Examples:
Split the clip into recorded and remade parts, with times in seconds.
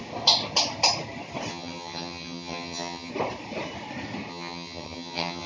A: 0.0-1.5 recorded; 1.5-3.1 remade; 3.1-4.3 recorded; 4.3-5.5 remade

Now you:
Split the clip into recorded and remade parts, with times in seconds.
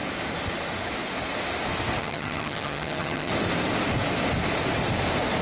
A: 0.0-2.0 recorded; 2.0-3.3 remade; 3.3-5.4 recorded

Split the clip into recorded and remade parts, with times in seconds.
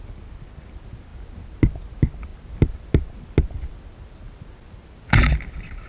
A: 0.0-5.9 recorded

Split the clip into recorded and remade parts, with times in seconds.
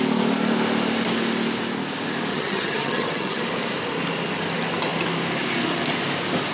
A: 0.0-2.3 recorded; 2.3-3.4 remade; 3.4-6.5 recorded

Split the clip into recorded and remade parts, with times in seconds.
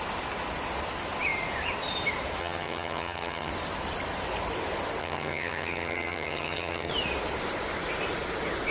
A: 0.0-2.4 recorded; 2.4-3.5 remade; 3.5-5.0 recorded; 5.0-6.9 remade; 6.9-8.7 recorded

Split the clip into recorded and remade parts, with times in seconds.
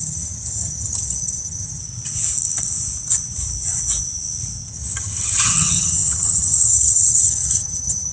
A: 0.0-1.8 remade; 1.8-4.7 recorded; 4.7-8.1 remade